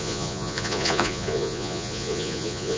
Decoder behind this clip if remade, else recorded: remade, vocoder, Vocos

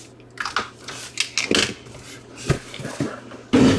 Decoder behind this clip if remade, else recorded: recorded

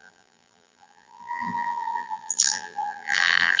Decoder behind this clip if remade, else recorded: remade, vocoder, BigVGAN v2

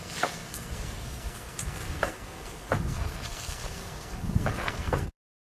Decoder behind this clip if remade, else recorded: remade, codec, SNAC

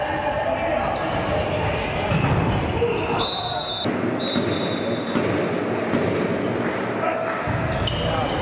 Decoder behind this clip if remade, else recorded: recorded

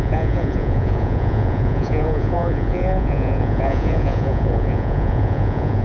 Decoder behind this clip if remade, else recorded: remade, vocoder, Vocos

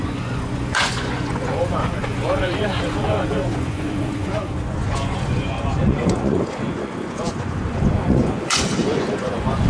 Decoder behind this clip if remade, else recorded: remade, vocoder, Vocos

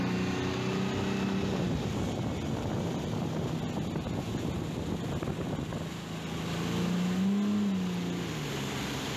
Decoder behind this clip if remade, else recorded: recorded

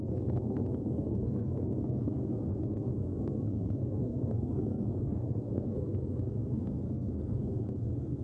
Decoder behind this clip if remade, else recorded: remade, codec, SNAC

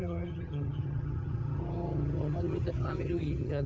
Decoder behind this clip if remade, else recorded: remade, vocoder, HiFi-GAN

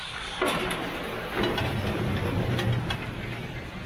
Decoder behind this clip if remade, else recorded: recorded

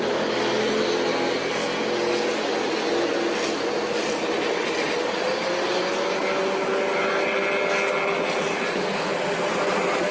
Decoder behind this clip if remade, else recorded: recorded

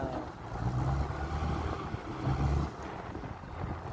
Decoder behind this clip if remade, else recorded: recorded